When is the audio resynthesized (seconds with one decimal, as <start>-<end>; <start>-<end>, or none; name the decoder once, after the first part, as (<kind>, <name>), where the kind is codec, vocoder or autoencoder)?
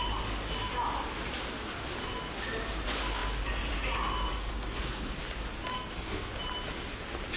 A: 4.3-5.2 (codec, SNAC); 5.7-6.3